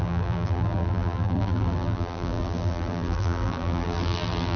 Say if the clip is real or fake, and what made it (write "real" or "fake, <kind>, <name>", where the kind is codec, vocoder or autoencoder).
fake, vocoder, BigVGAN v2